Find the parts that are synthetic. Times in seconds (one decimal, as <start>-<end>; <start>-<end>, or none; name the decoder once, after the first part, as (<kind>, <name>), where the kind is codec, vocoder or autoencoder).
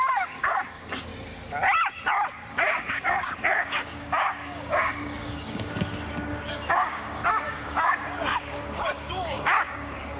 0.0-1.1 (codec, DAC); 2.5-10.2